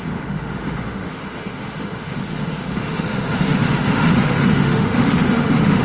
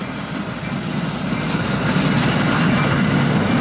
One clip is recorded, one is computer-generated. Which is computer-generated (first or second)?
first